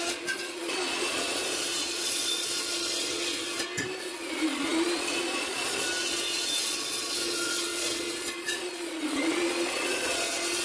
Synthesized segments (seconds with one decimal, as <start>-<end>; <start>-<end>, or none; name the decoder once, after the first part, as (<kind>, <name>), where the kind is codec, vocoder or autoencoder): 0.0-3.4 (vocoder, Vocos); 4.0-10.6